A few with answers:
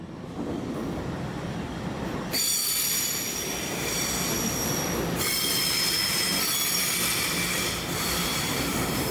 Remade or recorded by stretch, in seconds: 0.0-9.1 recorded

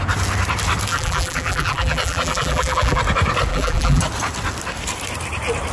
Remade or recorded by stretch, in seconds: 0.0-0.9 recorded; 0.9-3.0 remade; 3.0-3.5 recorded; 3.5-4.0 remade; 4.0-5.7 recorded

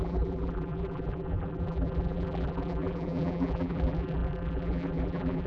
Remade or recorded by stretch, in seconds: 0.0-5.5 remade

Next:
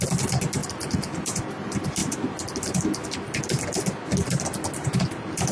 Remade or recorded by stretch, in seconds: 0.0-0.6 recorded; 0.6-1.2 remade; 1.2-5.5 recorded

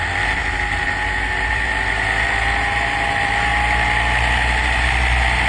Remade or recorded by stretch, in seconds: 0.0-0.4 remade; 0.4-1.5 recorded; 1.5-3.5 remade; 3.5-5.5 recorded